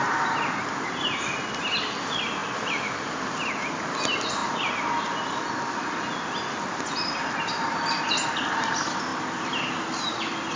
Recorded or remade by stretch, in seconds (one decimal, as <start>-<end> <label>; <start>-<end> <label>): 0.0-10.6 recorded